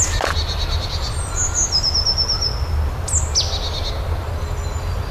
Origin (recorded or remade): recorded